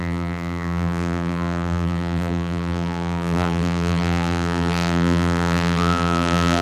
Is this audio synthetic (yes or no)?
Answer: yes